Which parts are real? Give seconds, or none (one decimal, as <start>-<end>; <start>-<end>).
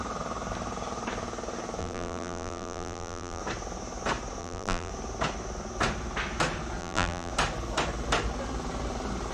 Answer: 0.0-1.8; 3.4-4.4; 4.9-6.8; 7.3-9.3